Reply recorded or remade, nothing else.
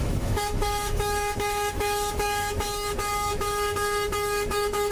remade